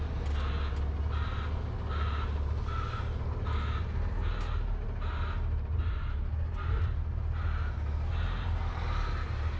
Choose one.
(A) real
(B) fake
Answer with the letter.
A